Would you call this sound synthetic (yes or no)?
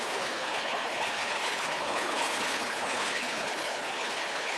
yes